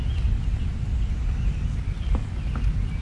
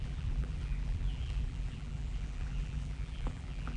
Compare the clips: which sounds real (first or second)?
first